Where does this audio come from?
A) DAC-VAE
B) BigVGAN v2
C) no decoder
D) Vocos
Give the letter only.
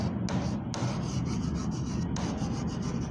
C